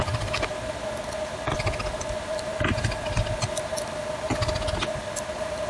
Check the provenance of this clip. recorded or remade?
recorded